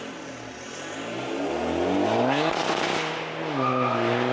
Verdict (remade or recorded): recorded